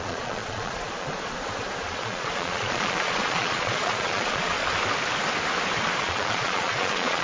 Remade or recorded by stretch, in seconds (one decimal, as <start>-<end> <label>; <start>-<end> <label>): 0.0-1.3 remade; 1.3-1.8 recorded; 1.8-4.6 remade; 4.6-6.0 recorded; 6.0-7.2 remade